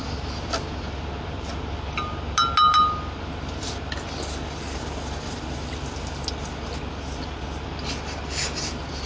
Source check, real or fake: real